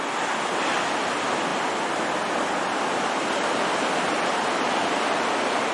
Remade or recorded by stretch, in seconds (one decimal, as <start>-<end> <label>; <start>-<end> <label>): 0.0-5.7 recorded